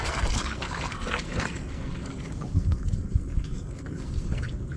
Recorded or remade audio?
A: remade